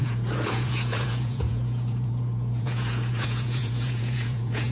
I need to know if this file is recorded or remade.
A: remade